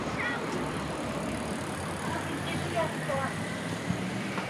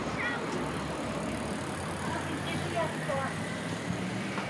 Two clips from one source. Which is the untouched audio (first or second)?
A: second